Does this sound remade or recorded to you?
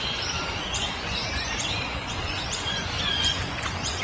remade